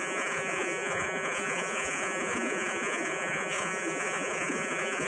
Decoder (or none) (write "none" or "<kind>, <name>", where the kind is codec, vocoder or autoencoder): vocoder, Vocos